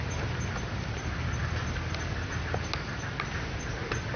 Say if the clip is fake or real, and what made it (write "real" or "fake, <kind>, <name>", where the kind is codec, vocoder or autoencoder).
real